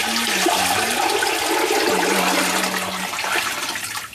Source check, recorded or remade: recorded